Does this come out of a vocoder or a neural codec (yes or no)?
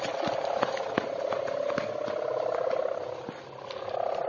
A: no